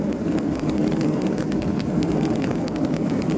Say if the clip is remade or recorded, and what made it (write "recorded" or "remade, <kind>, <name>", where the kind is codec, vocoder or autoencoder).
remade, codec, SNAC